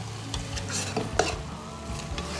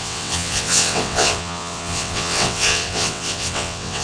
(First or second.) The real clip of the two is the first